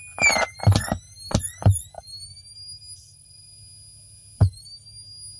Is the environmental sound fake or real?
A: real